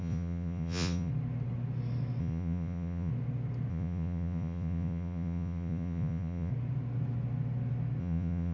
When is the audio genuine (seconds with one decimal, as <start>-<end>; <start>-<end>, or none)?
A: 1.1-2.2; 3.1-3.7; 6.5-8.0